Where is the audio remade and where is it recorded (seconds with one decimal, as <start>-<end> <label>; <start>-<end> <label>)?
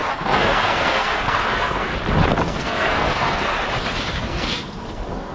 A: 0.0-1.9 remade; 1.9-2.4 recorded; 2.4-3.5 remade; 3.5-4.1 recorded; 4.1-5.3 remade